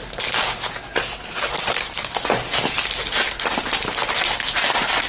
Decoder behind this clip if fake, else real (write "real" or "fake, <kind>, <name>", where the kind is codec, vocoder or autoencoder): real